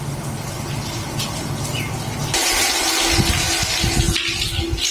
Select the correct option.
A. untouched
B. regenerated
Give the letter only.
A